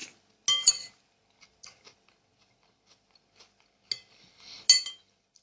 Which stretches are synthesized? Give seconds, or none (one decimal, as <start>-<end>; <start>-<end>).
none